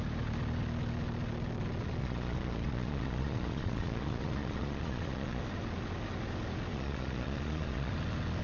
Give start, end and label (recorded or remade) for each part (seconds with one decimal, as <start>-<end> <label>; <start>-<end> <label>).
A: 0.0-2.0 recorded; 2.0-5.4 remade; 5.4-6.7 recorded; 6.7-7.9 remade; 7.9-8.4 recorded